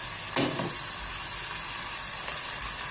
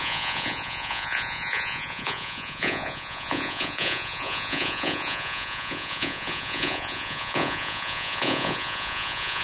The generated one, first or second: second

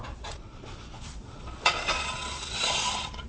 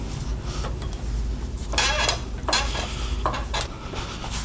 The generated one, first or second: first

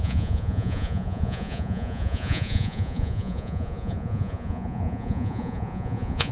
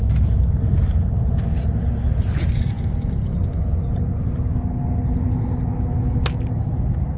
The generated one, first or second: first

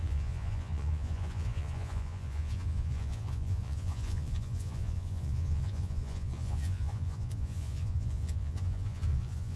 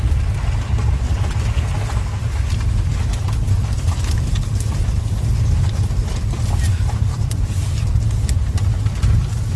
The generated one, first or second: first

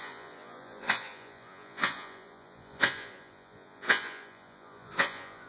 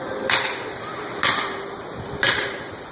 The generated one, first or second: first